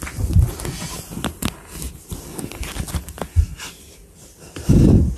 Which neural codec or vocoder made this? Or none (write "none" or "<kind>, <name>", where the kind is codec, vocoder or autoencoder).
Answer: none